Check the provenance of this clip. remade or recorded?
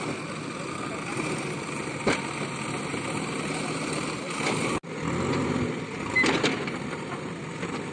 recorded